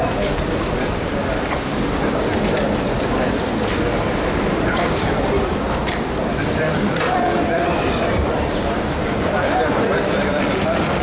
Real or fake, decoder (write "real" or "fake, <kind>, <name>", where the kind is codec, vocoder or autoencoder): fake, vocoder, BigVGAN v2